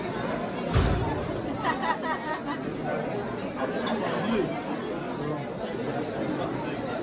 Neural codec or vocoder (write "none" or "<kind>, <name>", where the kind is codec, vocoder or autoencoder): none